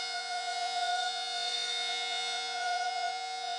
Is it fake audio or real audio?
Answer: fake